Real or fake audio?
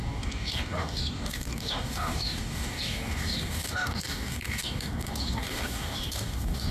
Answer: fake